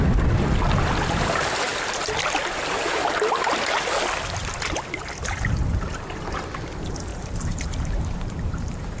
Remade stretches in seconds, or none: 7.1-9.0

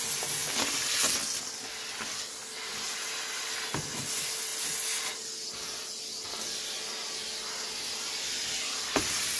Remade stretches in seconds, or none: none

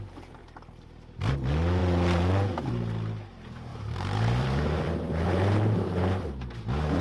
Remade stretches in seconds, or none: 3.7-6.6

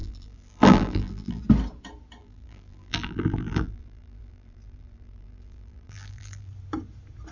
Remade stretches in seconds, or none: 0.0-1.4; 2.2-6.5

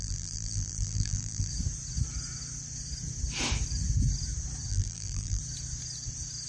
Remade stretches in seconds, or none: 0.0-1.5; 4.7-5.4

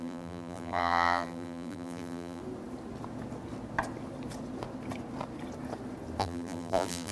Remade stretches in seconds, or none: 0.0-2.4; 6.2-7.1